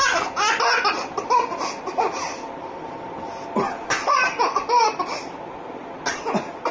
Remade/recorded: recorded